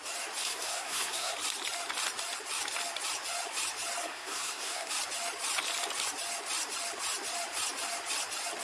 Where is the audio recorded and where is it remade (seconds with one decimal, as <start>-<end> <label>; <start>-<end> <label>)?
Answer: 0.0-0.4 recorded; 0.4-1.3 remade; 1.3-4.0 recorded; 4.0-4.9 remade; 4.9-8.6 recorded